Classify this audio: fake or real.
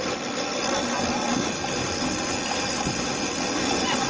real